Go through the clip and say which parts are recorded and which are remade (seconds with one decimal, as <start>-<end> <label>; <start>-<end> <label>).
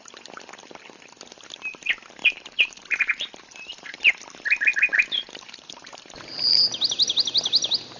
0.0-2.2 recorded; 2.2-4.1 remade; 4.1-4.9 recorded; 4.9-6.6 remade; 6.6-8.0 recorded